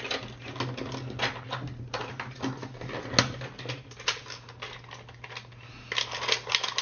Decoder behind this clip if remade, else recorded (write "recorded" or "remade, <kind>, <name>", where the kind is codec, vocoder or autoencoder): recorded